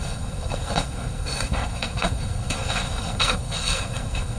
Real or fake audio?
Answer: fake